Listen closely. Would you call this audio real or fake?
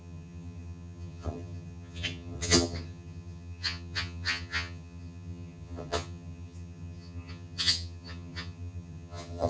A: fake